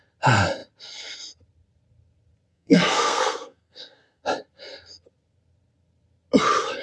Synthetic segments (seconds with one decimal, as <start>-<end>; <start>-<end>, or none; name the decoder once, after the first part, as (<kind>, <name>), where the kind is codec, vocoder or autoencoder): 2.5-4.2 (codec, SNAC)